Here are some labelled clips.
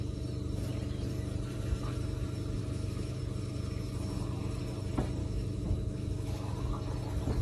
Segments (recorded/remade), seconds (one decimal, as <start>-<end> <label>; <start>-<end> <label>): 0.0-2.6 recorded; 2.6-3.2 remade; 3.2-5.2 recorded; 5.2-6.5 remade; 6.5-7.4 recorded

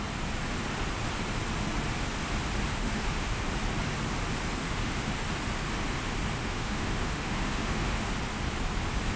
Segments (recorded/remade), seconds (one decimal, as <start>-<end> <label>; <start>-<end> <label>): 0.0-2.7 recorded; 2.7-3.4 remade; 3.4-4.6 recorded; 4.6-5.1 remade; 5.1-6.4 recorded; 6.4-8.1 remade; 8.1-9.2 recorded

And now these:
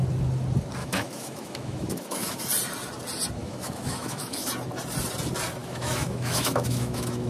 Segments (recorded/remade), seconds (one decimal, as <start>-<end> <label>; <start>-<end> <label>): 0.0-0.8 recorded; 0.8-2.4 remade; 2.4-3.4 recorded; 3.4-4.5 remade; 4.5-5.6 recorded; 5.6-7.3 remade

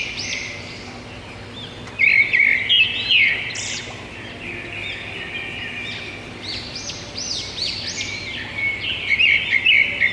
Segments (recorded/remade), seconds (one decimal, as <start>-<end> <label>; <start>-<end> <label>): 0.0-10.1 recorded

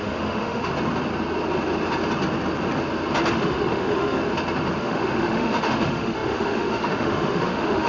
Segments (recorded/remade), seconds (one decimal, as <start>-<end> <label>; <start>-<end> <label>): 0.0-0.7 remade; 0.7-3.3 recorded; 3.3-4.2 remade; 4.2-4.8 recorded; 4.8-7.9 remade